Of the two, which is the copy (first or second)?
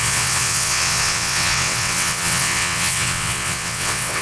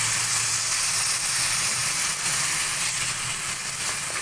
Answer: first